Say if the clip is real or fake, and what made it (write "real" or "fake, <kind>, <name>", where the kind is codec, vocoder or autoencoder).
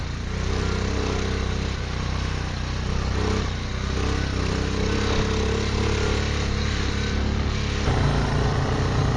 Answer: real